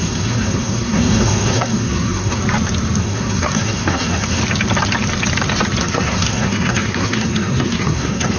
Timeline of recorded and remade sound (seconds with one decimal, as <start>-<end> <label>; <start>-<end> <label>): 0.0-2.4 remade; 2.4-3.0 recorded; 3.0-4.4 remade; 4.4-5.8 recorded; 5.8-8.4 remade